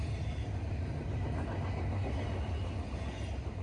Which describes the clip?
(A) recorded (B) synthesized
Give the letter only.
A